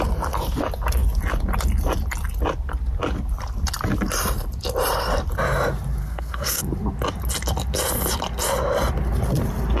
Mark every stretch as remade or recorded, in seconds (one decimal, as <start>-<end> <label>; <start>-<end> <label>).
0.0-6.0 recorded; 6.0-6.6 remade; 6.6-9.8 recorded